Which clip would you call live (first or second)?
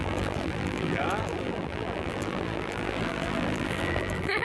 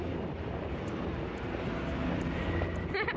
second